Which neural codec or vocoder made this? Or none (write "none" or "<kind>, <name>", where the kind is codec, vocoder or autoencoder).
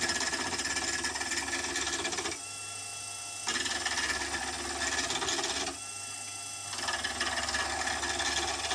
none